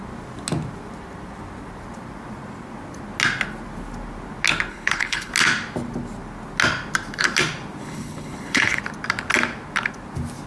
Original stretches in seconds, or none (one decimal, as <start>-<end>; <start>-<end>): 0.0-4.7; 5.3-7.8; 8.8-10.5